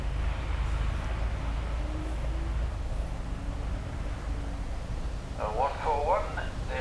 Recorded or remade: recorded